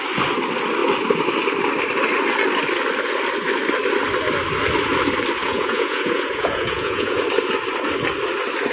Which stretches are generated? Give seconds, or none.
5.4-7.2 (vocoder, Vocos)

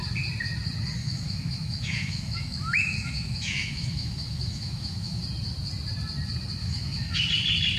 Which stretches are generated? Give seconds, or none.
1.0-5.2 (autoencoder, DAC-VAE); 6.6-7.3

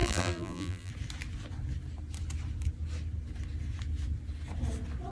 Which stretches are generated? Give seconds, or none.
0.0-0.9 (vocoder, BigVGAN v2)

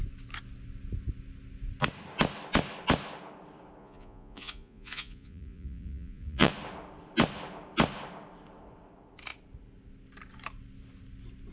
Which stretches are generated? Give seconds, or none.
3.8-6.5 (vocoder, Vocos)

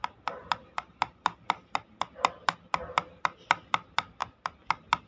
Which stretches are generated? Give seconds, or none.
none